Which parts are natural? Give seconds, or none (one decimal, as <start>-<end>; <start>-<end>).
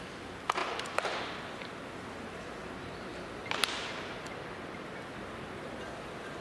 0.0-2.6; 3.1-6.4